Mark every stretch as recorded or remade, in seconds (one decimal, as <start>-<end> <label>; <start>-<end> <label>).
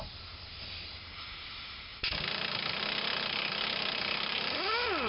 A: 0.0-5.1 recorded